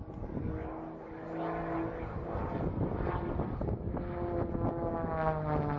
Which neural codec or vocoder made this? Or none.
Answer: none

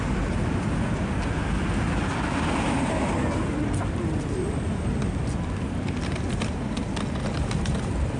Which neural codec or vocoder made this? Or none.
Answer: none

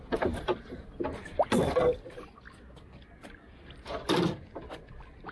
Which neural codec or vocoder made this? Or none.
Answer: vocoder, BigVGAN v2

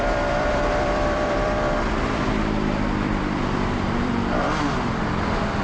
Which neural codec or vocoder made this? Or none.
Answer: vocoder, BigVGAN v2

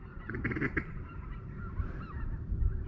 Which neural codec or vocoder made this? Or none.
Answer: vocoder, BigVGAN v2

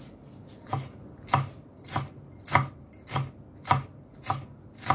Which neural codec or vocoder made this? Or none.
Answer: none